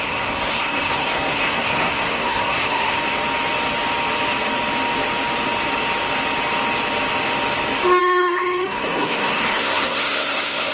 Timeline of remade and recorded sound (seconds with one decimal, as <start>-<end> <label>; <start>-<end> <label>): 0.0-3.0 remade; 3.0-8.0 recorded; 8.0-10.7 remade